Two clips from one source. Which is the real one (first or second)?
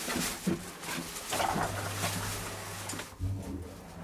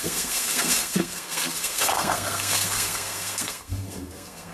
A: first